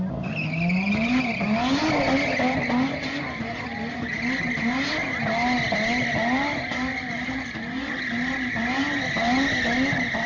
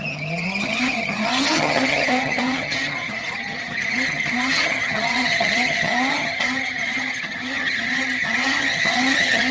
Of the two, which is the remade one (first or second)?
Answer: second